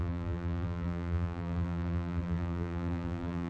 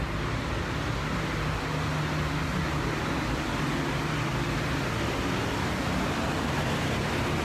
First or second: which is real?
second